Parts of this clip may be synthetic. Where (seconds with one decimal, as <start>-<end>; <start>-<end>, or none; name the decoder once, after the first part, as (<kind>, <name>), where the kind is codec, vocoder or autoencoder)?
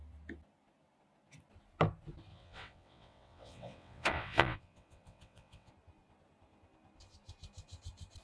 2.3-5.7 (vocoder, WaveNeXt)